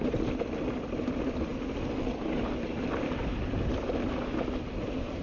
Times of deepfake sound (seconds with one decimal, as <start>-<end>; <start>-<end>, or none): none